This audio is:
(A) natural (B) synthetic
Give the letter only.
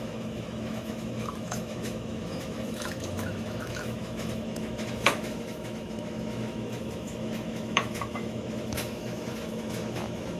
B